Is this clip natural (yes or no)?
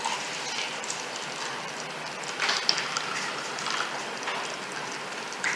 yes